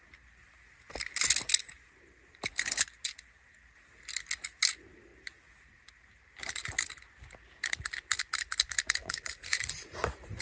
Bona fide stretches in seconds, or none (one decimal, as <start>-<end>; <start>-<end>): 0.0-9.0